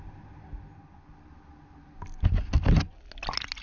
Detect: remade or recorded recorded